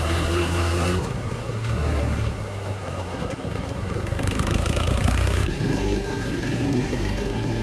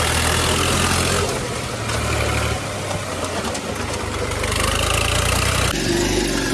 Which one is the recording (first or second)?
second